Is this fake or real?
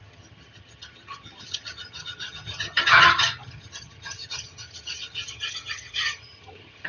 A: fake